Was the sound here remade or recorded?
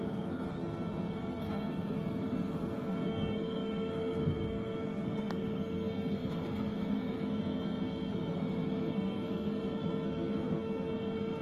remade